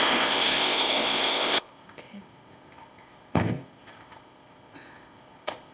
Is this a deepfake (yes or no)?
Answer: yes